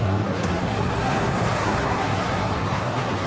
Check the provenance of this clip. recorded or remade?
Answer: remade